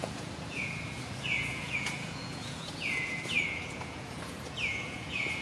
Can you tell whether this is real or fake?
fake